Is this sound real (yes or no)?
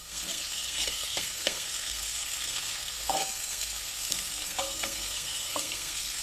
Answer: no